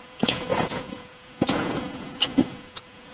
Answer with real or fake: fake